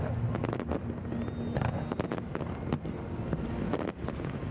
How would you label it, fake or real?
real